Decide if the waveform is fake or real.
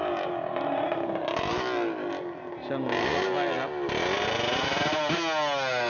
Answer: real